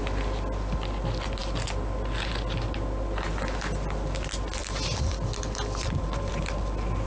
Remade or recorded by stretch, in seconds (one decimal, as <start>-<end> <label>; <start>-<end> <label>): 0.0-7.1 recorded